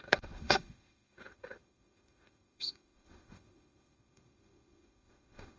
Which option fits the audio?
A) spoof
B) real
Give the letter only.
A